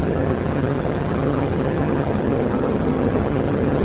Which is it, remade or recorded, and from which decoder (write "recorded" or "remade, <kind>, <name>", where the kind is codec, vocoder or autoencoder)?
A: remade, vocoder, HiFi-GAN